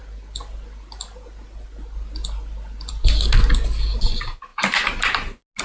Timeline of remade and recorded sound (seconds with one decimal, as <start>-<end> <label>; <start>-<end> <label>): 0.0-5.6 recorded